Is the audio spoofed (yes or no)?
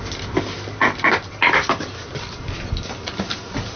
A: no